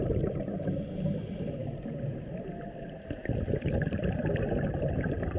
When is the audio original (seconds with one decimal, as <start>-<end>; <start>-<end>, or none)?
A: 0.0-5.4